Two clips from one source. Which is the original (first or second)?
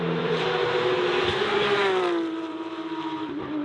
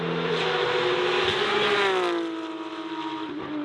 second